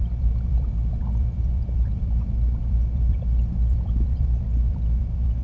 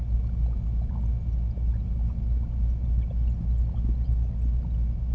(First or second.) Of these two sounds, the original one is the second